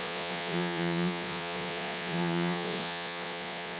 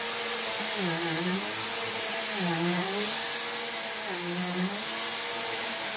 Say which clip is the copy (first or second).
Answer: first